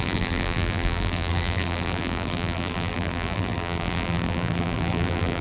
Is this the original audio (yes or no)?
no